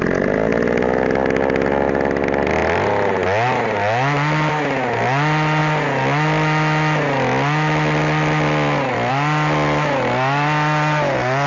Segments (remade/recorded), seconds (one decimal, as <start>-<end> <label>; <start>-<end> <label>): 0.0-11.5 recorded